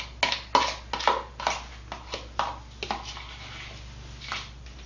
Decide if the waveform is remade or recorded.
recorded